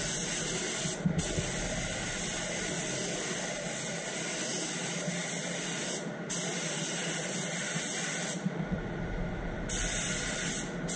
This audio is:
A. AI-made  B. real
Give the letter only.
B